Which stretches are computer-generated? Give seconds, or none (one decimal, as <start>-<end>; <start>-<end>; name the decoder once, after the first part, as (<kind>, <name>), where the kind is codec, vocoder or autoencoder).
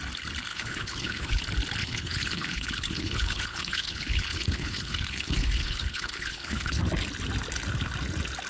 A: 0.5-1.4 (codec, HILCodec); 1.8-6.8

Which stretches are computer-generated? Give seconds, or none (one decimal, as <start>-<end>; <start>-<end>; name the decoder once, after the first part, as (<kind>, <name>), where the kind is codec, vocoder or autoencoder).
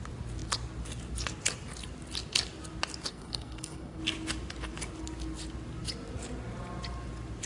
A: 3.1-4.0 (codec, SNAC)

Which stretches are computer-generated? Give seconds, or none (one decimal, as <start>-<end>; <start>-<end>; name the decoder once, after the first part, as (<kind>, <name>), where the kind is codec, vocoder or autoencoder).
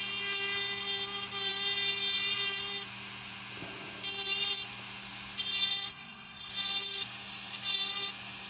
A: 5.9-6.5 (codec, SNAC)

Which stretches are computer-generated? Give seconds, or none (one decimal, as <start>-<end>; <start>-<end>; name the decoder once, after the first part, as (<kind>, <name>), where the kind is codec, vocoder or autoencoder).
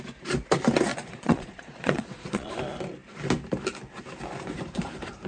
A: 0.9-2.5 (vocoder, Vocos)